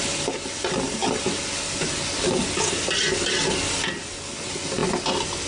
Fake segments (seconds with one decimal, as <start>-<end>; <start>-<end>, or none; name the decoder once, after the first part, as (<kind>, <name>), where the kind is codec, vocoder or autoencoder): none